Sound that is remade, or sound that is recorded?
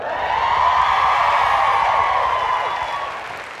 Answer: recorded